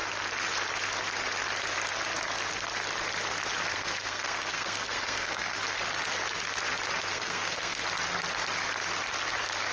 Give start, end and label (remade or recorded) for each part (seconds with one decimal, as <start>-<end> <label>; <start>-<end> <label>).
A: 0.0-3.7 recorded; 3.7-5.6 remade; 5.6-7.1 recorded; 7.1-7.8 remade; 7.8-9.7 recorded